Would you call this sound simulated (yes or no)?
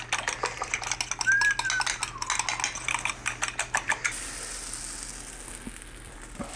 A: no